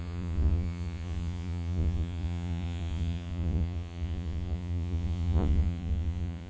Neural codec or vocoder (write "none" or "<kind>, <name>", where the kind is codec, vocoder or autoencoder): vocoder, Vocos